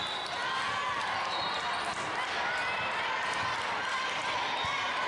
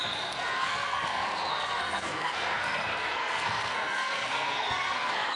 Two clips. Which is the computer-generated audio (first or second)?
second